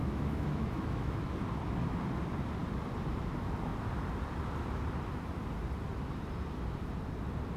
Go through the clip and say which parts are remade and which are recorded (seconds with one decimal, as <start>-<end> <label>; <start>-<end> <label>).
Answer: 0.0-1.3 remade; 1.3-7.6 recorded